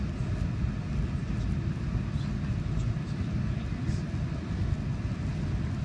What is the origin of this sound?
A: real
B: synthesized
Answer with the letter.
A